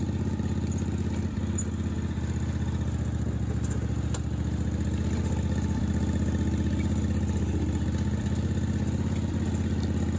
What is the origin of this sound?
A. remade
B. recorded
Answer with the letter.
B